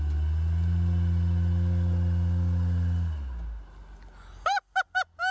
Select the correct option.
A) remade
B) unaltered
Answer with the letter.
B